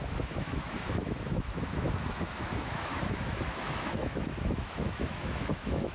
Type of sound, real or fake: fake